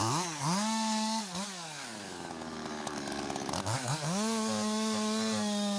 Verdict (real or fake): fake